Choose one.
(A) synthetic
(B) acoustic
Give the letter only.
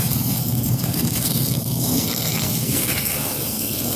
A